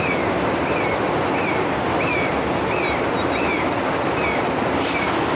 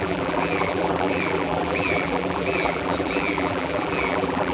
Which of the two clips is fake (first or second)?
second